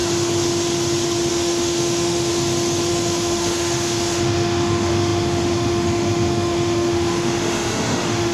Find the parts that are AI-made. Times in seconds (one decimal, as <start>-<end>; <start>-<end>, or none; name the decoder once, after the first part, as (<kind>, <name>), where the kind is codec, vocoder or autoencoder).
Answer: 1.3-2.3 (autoencoder, DAC-VAE); 2.9-8.3